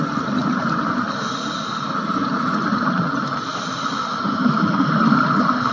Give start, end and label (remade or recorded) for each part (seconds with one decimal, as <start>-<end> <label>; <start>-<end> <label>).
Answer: 0.0-2.1 recorded; 2.1-4.8 remade; 4.8-5.7 recorded